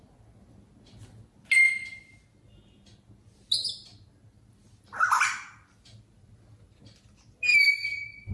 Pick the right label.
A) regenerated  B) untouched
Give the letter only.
B